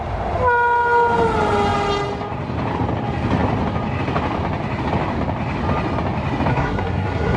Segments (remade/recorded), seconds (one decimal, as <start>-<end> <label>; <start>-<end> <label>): 0.0-6.5 recorded; 6.5-7.4 remade